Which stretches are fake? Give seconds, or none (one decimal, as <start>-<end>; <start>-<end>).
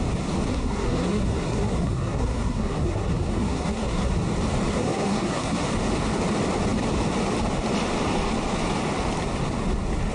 0.5-4.1; 4.7-5.7